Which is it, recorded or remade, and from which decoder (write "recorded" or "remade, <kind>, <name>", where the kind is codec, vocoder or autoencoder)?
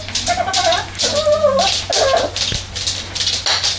recorded